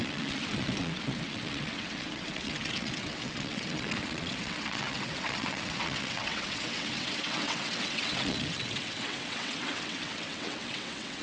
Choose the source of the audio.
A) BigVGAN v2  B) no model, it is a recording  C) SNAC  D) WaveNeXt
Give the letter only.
D